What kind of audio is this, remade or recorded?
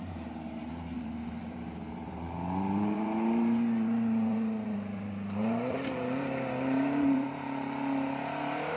remade